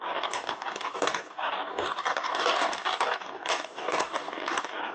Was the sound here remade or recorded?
remade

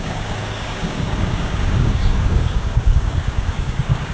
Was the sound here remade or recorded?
remade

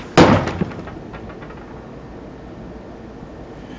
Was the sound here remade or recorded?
recorded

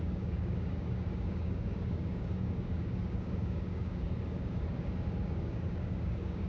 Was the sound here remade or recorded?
remade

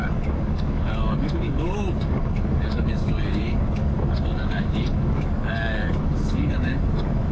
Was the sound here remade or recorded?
remade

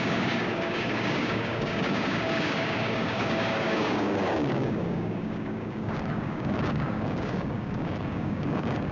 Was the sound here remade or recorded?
remade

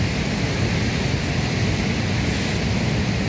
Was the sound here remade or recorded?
recorded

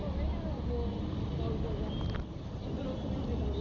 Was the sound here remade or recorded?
recorded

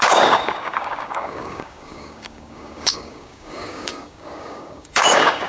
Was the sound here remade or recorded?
remade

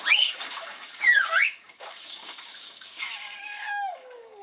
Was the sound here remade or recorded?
remade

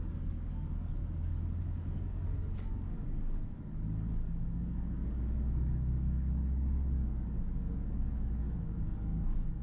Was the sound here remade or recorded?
remade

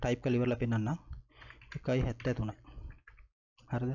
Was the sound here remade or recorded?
recorded